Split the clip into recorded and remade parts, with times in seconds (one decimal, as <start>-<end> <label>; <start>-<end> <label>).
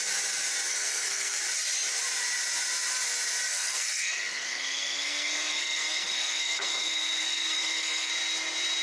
0.0-0.7 recorded; 0.7-1.4 remade; 1.4-3.5 recorded; 3.5-8.1 remade; 8.1-8.8 recorded